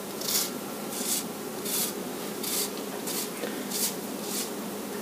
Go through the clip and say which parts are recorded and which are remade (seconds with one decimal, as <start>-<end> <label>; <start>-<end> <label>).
0.0-5.0 recorded